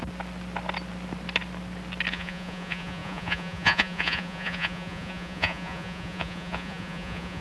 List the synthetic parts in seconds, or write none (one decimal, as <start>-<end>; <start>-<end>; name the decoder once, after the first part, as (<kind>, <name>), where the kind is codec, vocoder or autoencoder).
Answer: 2.1-7.4 (vocoder, Vocos)